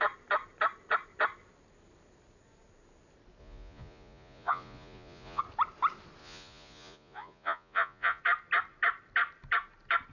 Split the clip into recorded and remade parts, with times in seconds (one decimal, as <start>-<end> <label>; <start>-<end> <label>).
0.0-3.4 recorded; 3.4-5.4 remade; 5.4-6.2 recorded; 6.2-8.2 remade; 8.2-10.1 recorded